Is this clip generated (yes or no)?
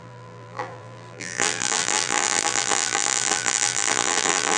yes